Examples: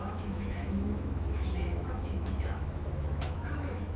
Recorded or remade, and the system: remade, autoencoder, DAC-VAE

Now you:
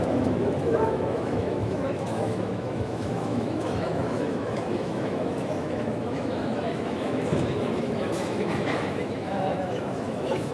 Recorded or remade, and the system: remade, autoencoder, DAC-VAE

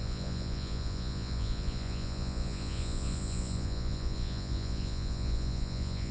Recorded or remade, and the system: remade, vocoder, Vocos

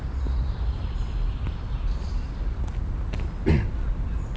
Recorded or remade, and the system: recorded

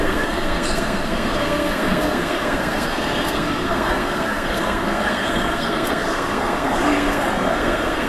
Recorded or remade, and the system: remade, codec, SNAC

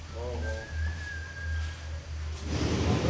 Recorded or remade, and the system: recorded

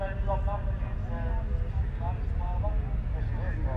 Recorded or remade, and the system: recorded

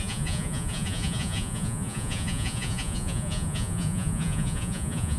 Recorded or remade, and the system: remade, vocoder, Vocos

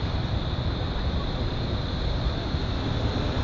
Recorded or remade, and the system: recorded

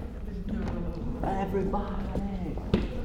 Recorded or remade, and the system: recorded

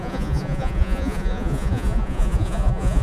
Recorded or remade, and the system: remade, vocoder, Vocos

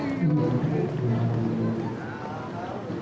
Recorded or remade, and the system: recorded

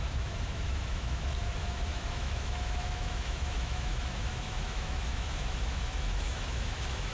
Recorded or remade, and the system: remade, autoencoder, DAC-VAE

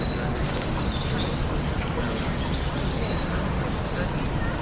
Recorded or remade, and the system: recorded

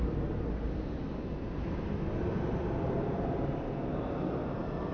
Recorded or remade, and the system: recorded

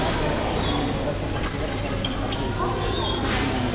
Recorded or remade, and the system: recorded